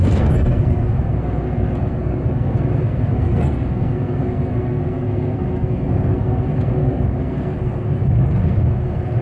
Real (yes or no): no